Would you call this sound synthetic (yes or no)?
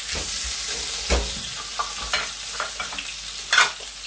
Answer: no